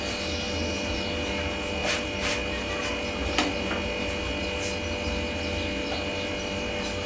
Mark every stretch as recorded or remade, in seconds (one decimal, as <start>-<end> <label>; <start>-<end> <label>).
0.0-7.1 recorded